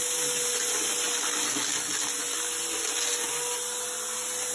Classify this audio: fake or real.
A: real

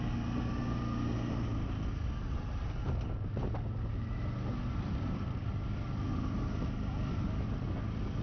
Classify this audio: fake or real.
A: real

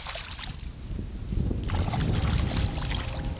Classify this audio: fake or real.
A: real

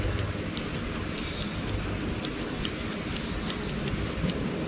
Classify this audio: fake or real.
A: real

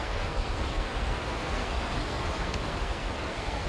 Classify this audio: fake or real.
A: fake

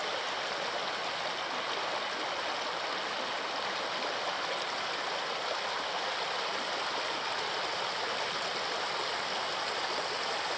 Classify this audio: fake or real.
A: real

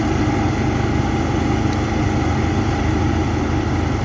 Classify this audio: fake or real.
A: real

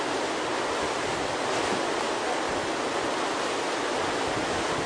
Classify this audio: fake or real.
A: real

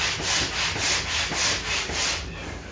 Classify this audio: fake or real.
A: real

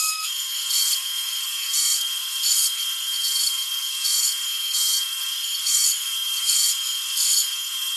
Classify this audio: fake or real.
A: fake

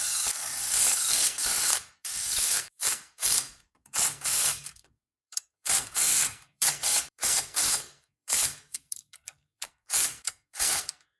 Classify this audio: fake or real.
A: fake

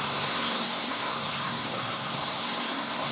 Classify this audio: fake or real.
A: fake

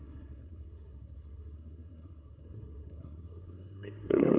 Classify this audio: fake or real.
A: fake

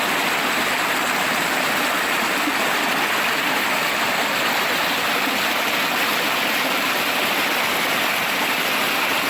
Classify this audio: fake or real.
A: real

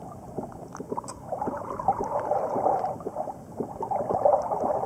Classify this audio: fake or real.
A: real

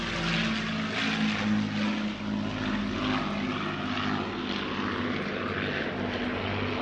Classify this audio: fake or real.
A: real